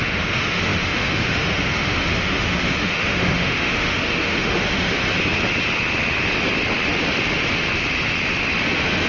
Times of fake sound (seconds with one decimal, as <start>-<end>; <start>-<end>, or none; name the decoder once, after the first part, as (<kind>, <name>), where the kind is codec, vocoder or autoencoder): 0.0-5.0 (autoencoder, DAC-VAE)